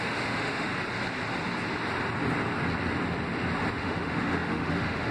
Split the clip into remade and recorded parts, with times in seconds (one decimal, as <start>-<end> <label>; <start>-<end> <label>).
0.0-0.7 remade; 0.7-3.8 recorded; 3.8-5.1 remade